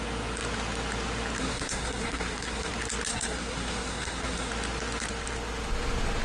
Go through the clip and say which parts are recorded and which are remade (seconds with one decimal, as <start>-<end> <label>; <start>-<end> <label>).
0.0-1.4 recorded; 1.4-2.7 remade; 2.7-3.1 recorded; 3.1-4.5 remade; 4.5-6.2 recorded

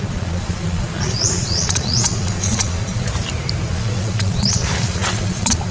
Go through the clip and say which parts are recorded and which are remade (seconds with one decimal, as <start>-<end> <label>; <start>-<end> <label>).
0.0-3.1 remade; 3.1-3.7 recorded; 3.7-5.7 remade

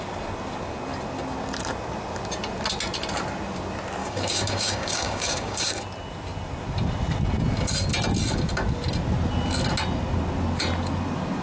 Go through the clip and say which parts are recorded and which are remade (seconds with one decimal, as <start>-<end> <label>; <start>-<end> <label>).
0.0-4.0 recorded; 4.0-5.8 remade; 5.8-11.4 recorded

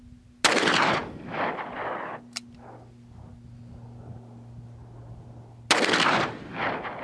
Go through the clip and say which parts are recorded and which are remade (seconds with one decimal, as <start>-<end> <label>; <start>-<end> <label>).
0.0-7.0 recorded

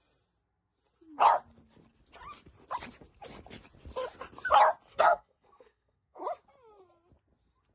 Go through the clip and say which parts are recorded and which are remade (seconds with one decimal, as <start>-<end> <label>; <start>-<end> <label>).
0.0-4.9 recorded; 4.9-6.2 remade; 6.2-7.7 recorded

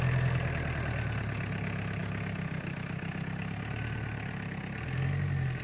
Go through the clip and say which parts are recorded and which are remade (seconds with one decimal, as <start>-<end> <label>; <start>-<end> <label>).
0.0-5.6 recorded

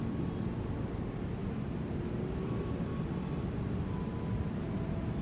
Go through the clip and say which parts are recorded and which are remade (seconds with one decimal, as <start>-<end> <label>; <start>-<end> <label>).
0.0-5.2 recorded